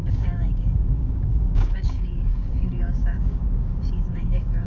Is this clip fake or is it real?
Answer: fake